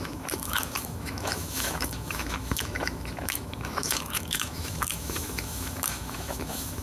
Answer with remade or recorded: remade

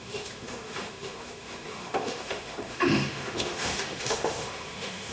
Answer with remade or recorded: remade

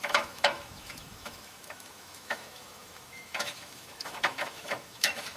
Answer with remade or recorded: remade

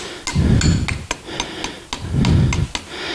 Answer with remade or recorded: recorded